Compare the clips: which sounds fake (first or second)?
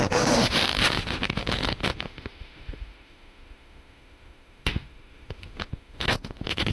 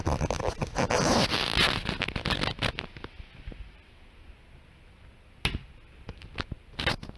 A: first